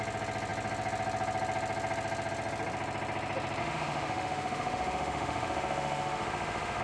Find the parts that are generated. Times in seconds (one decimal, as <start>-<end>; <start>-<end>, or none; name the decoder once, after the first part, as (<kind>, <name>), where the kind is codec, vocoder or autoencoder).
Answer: 3.6-6.8 (autoencoder, DAC-VAE)